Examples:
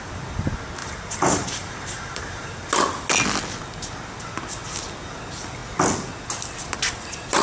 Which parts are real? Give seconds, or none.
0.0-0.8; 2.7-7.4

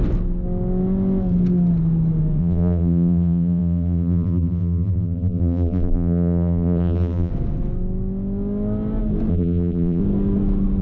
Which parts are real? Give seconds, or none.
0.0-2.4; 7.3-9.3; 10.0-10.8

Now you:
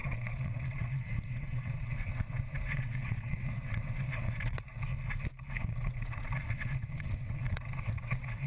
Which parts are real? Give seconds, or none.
4.9-5.6

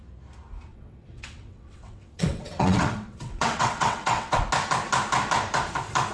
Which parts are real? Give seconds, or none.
0.0-0.7; 4.4-6.1

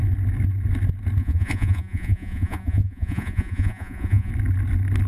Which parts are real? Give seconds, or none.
0.0-1.2; 4.3-5.1

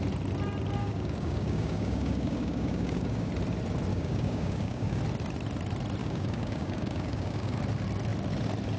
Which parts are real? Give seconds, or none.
0.0-0.8; 3.3-3.9; 5.0-6.0; 7.6-8.8